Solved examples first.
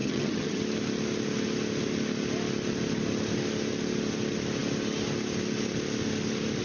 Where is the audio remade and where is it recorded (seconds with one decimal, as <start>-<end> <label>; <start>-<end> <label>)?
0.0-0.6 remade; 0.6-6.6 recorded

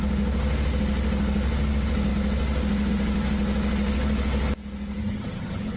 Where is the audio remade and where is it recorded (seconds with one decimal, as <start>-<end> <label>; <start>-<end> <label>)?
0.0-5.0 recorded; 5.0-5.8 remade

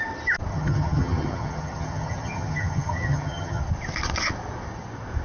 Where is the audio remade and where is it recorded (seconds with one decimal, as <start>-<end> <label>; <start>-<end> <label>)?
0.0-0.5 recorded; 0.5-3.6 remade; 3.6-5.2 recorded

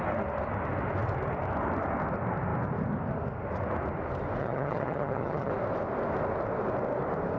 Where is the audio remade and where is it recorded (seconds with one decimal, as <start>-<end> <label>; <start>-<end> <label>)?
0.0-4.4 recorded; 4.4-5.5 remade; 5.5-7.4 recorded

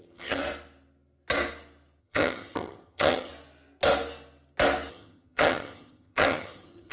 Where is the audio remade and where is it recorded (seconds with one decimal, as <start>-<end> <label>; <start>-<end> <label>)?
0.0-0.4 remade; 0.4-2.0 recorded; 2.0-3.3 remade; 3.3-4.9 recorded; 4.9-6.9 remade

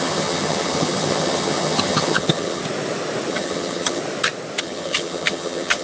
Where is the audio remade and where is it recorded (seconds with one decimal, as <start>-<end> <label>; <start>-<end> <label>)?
0.0-2.6 remade; 2.6-3.3 recorded; 3.3-4.0 remade; 4.0-4.6 recorded; 4.6-5.8 remade

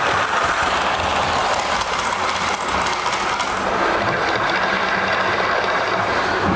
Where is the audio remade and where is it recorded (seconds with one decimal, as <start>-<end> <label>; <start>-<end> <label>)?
0.0-6.6 recorded